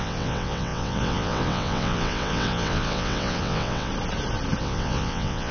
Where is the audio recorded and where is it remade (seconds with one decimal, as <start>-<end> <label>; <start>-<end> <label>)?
0.0-3.9 remade; 3.9-4.6 recorded; 4.6-5.5 remade